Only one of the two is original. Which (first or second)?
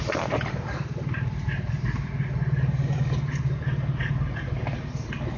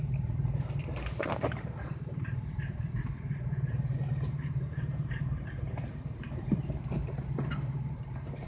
first